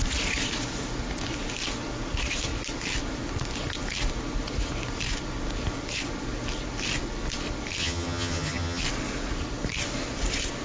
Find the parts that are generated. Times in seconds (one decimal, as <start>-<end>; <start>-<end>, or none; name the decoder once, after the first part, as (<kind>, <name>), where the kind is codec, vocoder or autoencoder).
7.8-8.8 (vocoder, HiFi-GAN)